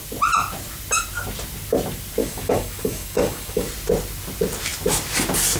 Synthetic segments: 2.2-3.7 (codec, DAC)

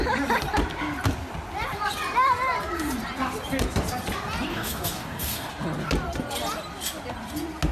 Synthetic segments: 4.5-5.5 (codec, DAC)

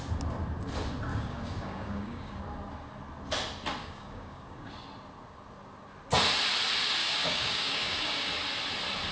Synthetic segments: 1.1-2.4 (codec, DAC); 3.8-4.7; 7.0-8.3

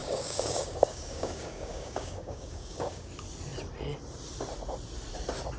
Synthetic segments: 0.0-3.1 (codec, DAC)

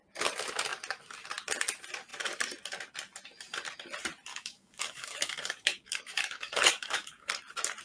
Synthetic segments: 4.3-7.3 (codec, DAC)